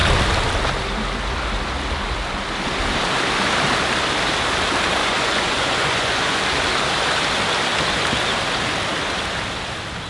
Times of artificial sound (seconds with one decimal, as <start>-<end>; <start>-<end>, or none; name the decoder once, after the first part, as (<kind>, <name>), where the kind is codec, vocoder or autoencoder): 5.0-6.4 (vocoder, Vocos)